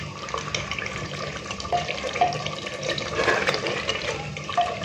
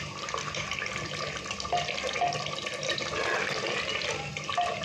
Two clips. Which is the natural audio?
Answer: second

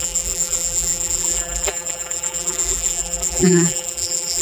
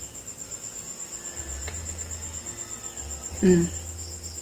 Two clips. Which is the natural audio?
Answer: second